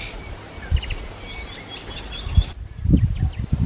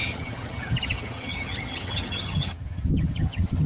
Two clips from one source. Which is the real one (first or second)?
first